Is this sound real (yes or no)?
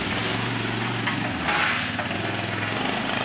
yes